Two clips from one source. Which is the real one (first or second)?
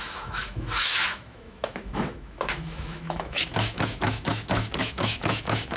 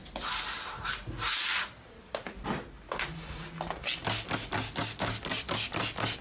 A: second